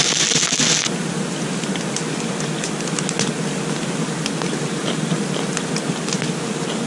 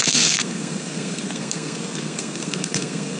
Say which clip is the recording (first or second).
first